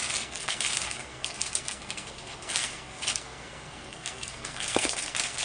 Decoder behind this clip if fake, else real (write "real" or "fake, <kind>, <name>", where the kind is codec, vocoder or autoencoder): fake, codec, SNAC